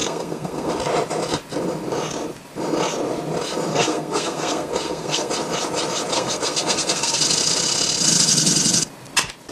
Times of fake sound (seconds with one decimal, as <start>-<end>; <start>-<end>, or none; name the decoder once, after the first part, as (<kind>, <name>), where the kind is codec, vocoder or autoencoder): 0.0-0.7 (codec, SNAC); 3.7-5.3; 6.1-7.2